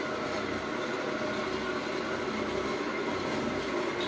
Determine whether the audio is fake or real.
real